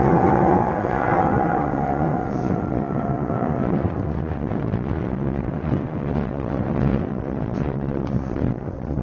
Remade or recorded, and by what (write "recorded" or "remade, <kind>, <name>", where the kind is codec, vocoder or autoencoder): remade, vocoder, WaveNeXt